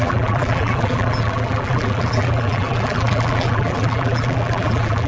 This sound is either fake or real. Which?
fake